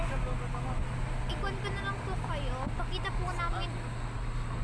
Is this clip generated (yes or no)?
no